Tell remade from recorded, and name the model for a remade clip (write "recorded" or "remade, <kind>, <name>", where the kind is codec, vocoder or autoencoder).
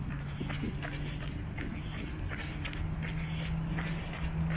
recorded